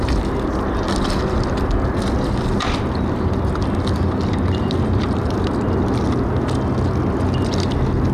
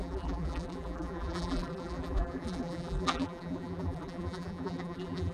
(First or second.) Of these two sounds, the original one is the first